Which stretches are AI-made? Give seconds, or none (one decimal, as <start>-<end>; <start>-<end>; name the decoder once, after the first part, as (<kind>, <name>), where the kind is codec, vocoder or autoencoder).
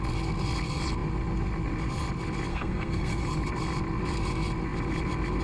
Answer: 2.5-3.2 (codec, SNAC)